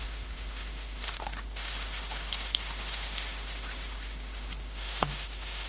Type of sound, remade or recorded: remade